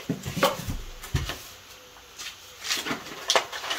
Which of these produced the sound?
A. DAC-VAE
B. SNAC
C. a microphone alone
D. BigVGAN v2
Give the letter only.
C